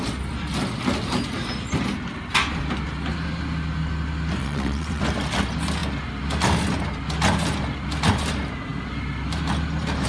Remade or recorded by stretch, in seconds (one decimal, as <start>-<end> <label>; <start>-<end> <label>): 0.0-4.4 recorded; 4.4-5.0 remade; 5.0-10.1 recorded